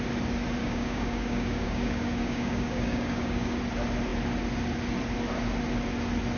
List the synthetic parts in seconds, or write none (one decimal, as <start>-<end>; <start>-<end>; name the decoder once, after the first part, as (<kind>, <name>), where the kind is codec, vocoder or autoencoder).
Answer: 0.6-3.6 (codec, DAC)